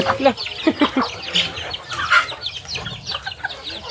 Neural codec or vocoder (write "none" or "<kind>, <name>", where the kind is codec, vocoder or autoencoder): none